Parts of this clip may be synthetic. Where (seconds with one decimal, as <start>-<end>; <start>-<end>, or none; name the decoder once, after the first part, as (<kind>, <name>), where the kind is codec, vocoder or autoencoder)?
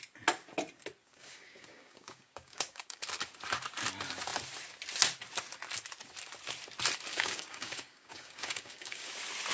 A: 1.0-3.0 (codec, DAC); 7.1-9.1